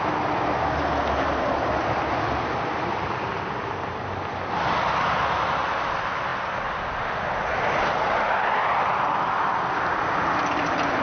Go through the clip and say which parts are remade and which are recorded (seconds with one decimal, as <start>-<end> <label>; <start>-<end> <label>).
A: 0.0-11.0 recorded